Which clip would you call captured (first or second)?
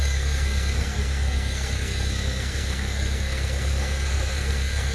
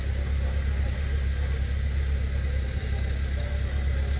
second